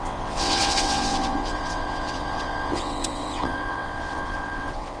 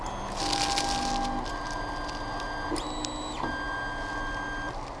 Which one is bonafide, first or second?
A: second